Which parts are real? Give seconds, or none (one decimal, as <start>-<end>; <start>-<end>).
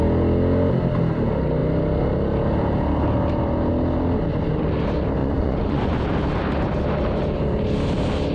0.0-5.2; 5.9-8.3